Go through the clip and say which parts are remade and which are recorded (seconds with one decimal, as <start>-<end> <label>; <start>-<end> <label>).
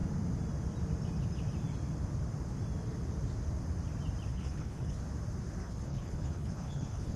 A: 0.0-4.3 recorded; 4.3-5.0 remade; 5.0-5.6 recorded; 5.6-7.2 remade